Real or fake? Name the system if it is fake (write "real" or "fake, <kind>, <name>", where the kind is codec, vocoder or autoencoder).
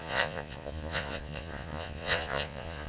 fake, vocoder, Vocos